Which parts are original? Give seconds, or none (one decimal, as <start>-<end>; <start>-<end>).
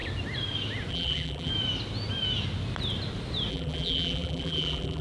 0.0-0.9; 1.5-3.5